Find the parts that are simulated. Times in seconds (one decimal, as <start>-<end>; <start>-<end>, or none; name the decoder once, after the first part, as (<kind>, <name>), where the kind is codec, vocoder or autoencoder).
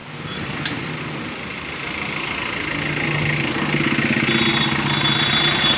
none